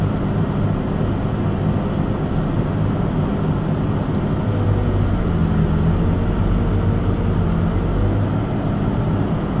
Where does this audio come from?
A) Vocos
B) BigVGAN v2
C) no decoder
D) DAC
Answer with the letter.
C